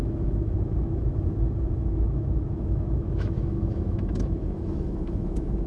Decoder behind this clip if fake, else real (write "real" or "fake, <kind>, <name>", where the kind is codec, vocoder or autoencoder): fake, autoencoder, DAC-VAE